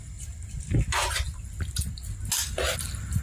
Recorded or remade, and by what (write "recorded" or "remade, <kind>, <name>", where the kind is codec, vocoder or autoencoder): recorded